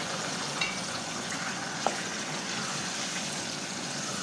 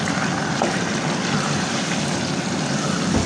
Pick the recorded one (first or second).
second